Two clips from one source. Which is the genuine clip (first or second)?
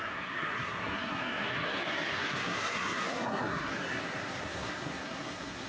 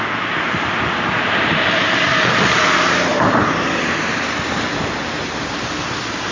second